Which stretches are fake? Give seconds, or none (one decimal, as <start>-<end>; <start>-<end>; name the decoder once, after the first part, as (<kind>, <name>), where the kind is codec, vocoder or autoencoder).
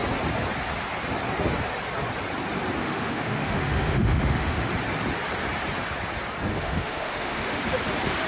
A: 2.8-4.7 (autoencoder, DAC-VAE); 6.5-7.6